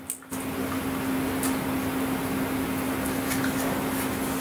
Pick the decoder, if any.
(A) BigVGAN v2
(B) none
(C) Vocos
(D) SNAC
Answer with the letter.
B